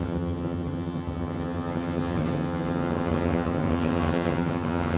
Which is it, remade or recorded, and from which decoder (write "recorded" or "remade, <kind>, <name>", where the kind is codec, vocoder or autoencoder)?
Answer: remade, vocoder, HiFi-GAN